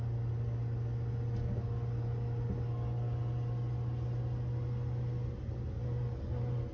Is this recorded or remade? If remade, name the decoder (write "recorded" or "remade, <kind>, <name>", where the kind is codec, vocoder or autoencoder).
recorded